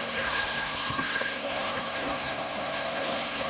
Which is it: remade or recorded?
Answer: remade